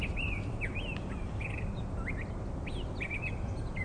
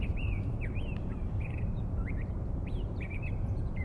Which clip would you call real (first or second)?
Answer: first